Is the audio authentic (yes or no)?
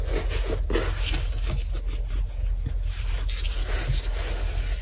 yes